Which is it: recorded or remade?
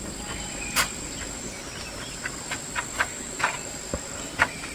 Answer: recorded